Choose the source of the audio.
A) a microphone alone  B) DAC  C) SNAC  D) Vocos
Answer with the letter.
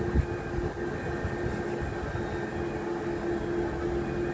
A